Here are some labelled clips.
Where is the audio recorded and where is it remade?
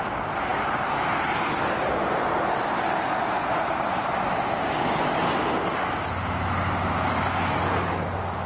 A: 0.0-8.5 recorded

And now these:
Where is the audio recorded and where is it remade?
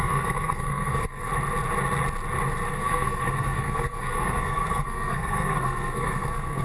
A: 0.0-1.3 remade; 1.3-2.7 recorded; 2.7-6.6 remade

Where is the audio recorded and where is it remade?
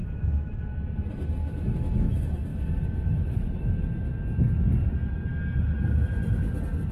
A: 0.0-0.8 remade; 0.8-1.4 recorded; 1.4-2.1 remade; 2.1-2.5 recorded; 2.5-3.7 remade; 3.7-6.9 recorded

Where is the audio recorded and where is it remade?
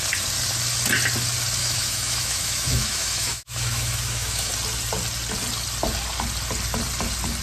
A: 0.0-1.6 recorded; 1.6-4.5 remade; 4.5-7.4 recorded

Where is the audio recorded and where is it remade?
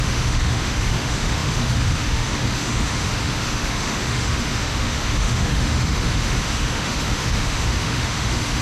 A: 0.0-8.6 remade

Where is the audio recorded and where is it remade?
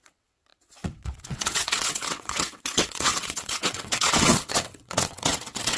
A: 0.0-5.8 remade